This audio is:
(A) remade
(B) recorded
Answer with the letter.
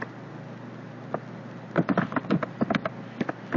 B